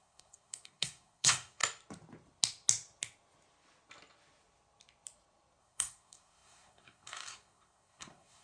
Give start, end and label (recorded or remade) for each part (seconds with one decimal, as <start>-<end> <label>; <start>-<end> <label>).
0.0-1.6 remade; 1.6-5.6 recorded; 5.6-8.4 remade